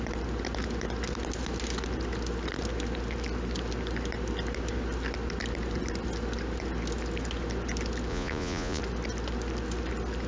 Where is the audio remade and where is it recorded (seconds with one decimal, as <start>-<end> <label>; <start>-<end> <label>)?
0.0-8.1 recorded; 8.1-8.8 remade; 8.8-10.3 recorded